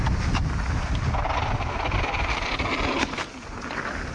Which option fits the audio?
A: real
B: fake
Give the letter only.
A